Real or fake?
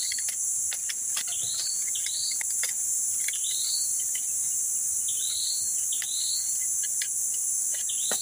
real